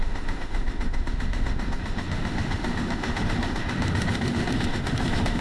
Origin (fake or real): fake